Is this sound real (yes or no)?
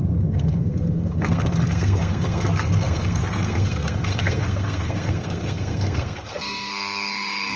no